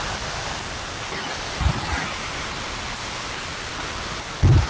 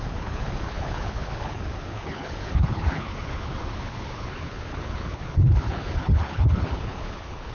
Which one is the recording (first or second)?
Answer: first